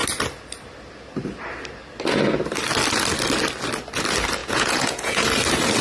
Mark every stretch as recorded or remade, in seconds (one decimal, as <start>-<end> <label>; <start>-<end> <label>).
0.0-4.4 recorded; 4.4-5.3 remade; 5.3-5.8 recorded